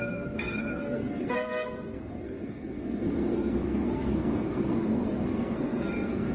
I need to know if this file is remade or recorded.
remade